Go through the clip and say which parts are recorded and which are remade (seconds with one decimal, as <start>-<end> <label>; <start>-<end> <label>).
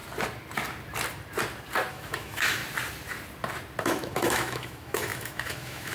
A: 0.0-1.9 recorded; 1.9-2.6 remade; 2.6-3.8 recorded; 3.8-5.9 remade